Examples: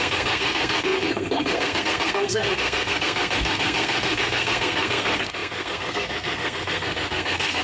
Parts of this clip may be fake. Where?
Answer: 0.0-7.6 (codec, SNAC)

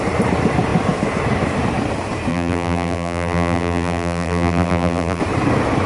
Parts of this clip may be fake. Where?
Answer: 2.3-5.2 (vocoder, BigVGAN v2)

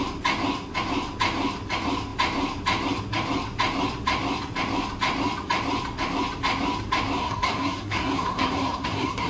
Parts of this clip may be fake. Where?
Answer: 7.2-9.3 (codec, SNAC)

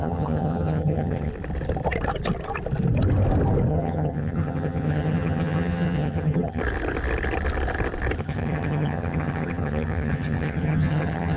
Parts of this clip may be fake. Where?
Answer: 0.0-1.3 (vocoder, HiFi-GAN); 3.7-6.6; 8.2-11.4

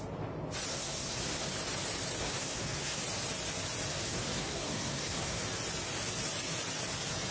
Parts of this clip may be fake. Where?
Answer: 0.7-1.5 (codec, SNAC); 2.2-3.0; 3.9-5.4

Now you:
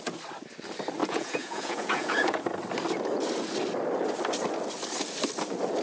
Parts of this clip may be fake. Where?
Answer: 1.0-2.4 (vocoder, Vocos)

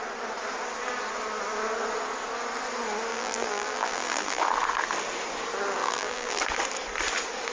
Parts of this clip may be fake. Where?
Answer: 3.1-4.4 (vocoder, BigVGAN v2); 5.8-6.4